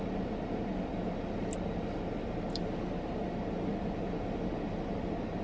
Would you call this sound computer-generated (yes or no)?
no